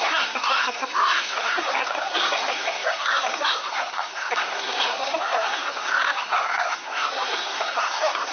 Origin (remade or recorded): remade